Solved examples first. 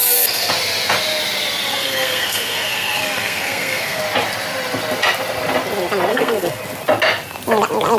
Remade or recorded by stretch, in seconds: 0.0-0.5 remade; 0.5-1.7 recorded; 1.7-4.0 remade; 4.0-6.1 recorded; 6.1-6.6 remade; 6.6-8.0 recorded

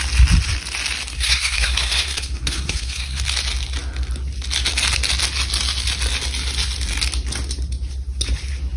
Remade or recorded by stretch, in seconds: 0.0-1.1 recorded; 1.1-3.2 remade; 3.2-8.8 recorded

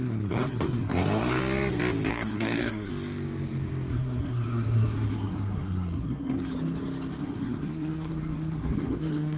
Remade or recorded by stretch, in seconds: 0.0-1.4 remade; 1.4-2.1 recorded; 2.1-2.9 remade; 2.9-3.9 recorded; 3.9-6.5 remade; 6.5-7.2 recorded; 7.2-9.4 remade

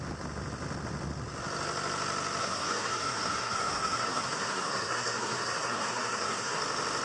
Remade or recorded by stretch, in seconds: 0.0-2.4 recorded; 2.4-6.6 remade; 6.6-7.0 recorded

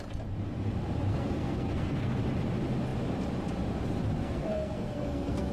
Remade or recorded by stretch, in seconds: 0.0-1.1 recorded; 1.1-2.2 remade; 2.2-4.2 recorded; 4.2-5.5 remade

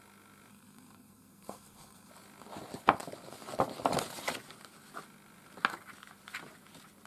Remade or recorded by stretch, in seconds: 0.0-0.5 recorded; 0.5-2.1 remade; 2.1-7.1 recorded

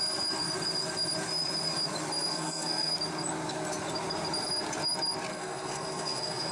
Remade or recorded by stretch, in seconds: 0.0-2.3 recorded; 2.3-2.9 remade; 2.9-5.3 recorded; 5.3-6.5 remade